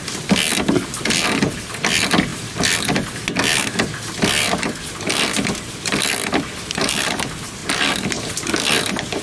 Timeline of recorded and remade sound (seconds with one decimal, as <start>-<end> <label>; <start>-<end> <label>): 0.0-9.2 recorded